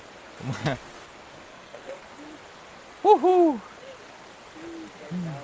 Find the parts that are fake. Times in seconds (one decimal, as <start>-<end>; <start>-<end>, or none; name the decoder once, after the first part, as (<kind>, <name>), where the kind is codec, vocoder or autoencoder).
1.5-2.0 (codec, SNAC)